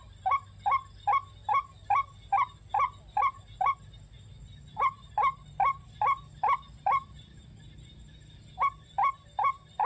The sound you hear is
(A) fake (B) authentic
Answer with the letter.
B